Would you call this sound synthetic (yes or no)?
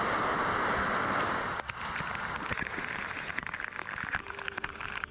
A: yes